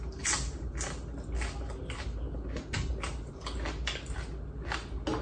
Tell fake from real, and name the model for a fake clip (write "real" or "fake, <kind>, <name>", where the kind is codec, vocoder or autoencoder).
real